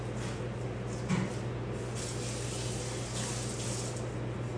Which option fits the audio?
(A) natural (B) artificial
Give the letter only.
A